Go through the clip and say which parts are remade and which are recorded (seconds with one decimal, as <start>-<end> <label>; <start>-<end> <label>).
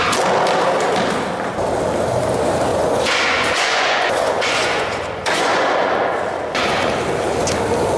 0.0-2.7 recorded; 2.7-6.9 remade; 6.9-8.0 recorded